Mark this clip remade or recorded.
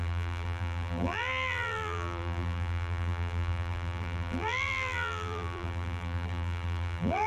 remade